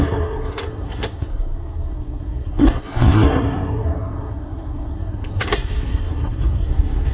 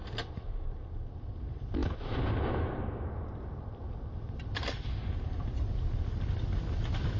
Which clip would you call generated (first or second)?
first